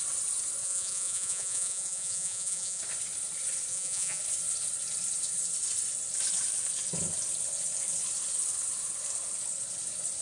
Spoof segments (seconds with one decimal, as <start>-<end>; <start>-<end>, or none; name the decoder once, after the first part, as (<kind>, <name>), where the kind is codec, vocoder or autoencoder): 0.6-2.8 (vocoder, Vocos); 3.7-4.2